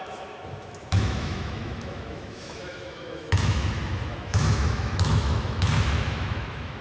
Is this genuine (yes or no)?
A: no